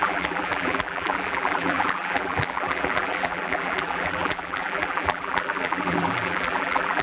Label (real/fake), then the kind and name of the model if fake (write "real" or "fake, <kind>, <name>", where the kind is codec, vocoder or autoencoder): fake, vocoder, BigVGAN v2